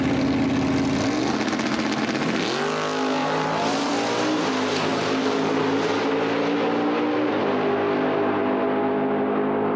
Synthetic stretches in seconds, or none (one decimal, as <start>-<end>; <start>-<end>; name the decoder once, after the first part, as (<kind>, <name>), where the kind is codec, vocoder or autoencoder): 3.2-3.9 (vocoder, BigVGAN v2); 4.9-5.6